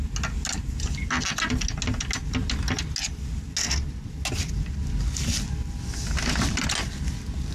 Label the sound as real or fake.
real